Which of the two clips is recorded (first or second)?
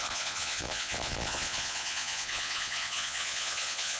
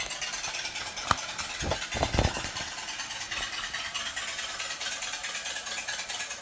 second